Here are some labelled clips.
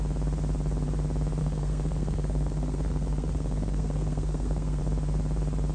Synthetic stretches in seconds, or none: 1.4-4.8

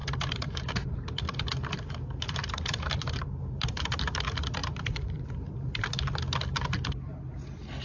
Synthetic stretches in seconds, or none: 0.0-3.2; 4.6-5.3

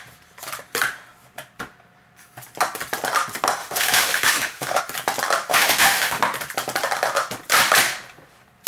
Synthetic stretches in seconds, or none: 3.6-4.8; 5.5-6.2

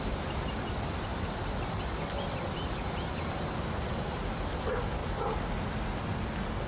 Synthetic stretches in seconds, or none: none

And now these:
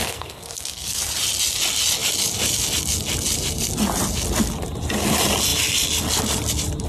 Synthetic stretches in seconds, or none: 0.0-1.0

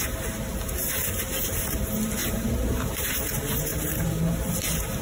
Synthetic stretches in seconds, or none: 2.2-3.1; 3.7-4.5